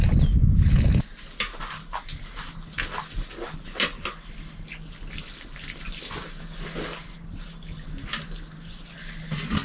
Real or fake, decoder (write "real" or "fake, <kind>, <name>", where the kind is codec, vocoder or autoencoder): real